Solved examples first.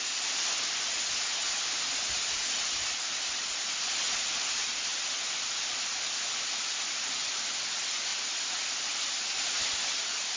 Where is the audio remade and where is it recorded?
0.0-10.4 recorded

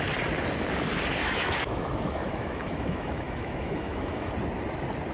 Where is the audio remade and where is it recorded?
0.0-1.2 recorded; 1.2-4.3 remade; 4.3-5.1 recorded

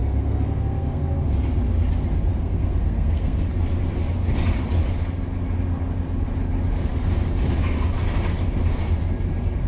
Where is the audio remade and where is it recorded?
0.0-1.3 remade; 1.3-2.3 recorded; 2.3-3.5 remade; 3.5-9.7 recorded

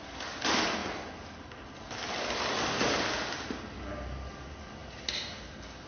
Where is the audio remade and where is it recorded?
0.0-5.9 recorded

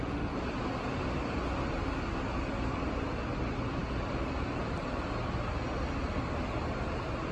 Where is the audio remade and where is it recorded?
0.0-7.3 recorded

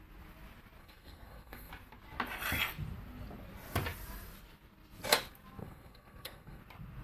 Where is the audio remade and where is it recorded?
0.0-0.8 recorded; 0.8-1.7 remade; 1.7-5.6 recorded; 5.6-6.6 remade; 6.6-7.0 recorded

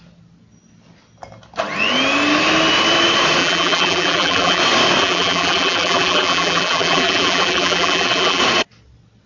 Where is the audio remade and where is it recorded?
0.0-3.4 recorded; 3.4-4.6 remade; 4.6-5.0 recorded; 5.0-8.4 remade; 8.4-9.3 recorded